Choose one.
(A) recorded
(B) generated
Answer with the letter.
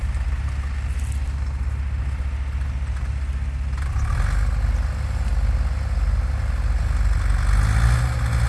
A